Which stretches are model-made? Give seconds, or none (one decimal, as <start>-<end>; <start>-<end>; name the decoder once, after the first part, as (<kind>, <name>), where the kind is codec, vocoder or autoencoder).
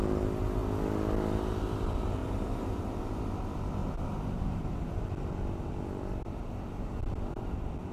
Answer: 2.2-3.0 (vocoder, BigVGAN v2); 3.8-5.0